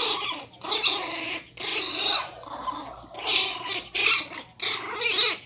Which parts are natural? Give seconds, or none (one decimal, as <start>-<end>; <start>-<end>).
0.0-5.5